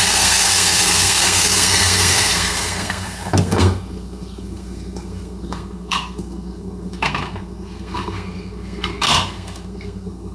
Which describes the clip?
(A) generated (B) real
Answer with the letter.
A